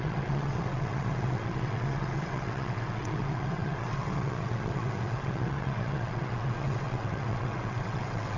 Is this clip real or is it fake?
fake